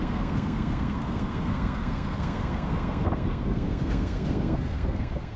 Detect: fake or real fake